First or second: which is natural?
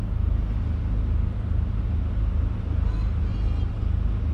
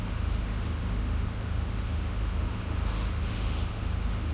first